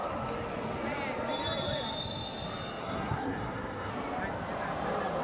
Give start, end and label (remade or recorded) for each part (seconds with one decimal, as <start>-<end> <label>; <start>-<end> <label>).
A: 0.0-2.8 recorded; 2.8-3.9 remade; 3.9-5.2 recorded